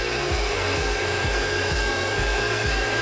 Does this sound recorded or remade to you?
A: remade